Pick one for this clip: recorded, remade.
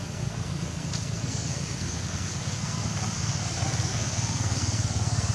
remade